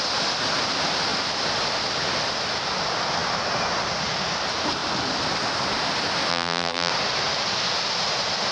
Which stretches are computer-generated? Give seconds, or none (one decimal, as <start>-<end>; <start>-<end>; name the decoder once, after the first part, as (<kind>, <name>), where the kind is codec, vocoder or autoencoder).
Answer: 6.3-6.9 (vocoder, BigVGAN v2)